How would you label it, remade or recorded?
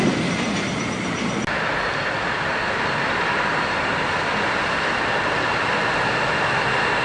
recorded